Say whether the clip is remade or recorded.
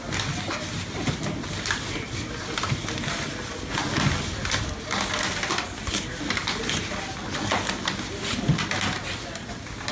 recorded